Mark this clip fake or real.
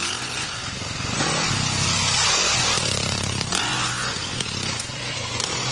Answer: fake